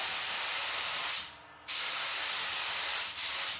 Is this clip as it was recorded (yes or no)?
yes